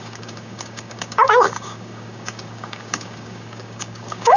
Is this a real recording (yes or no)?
no